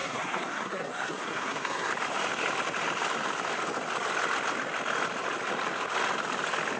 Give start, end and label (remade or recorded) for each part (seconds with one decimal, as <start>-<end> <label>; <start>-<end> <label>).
0.0-1.9 remade; 1.9-6.8 recorded